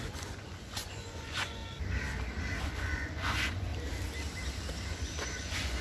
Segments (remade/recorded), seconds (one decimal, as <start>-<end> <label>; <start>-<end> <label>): 0.0-1.6 remade; 1.6-2.6 recorded; 2.6-3.7 remade; 3.7-4.9 recorded; 4.9-5.8 remade